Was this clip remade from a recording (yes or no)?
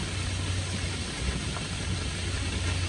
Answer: no